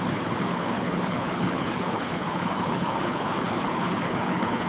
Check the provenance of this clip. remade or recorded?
remade